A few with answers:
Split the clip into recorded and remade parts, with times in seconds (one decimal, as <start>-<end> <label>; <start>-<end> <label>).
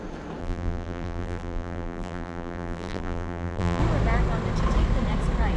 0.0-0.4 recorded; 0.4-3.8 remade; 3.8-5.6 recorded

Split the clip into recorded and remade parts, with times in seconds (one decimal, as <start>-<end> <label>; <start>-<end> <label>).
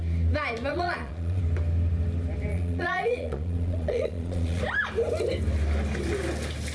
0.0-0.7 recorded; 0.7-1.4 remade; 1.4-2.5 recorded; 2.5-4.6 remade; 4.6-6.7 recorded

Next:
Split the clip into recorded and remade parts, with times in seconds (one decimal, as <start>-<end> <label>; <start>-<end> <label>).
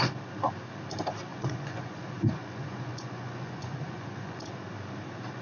0.0-1.3 recorded; 1.3-4.5 remade; 4.5-5.4 recorded